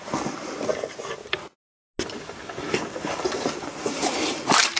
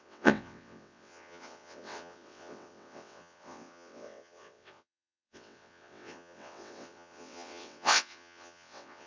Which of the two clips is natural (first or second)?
first